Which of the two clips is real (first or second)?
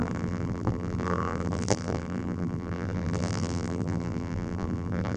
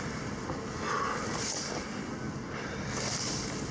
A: second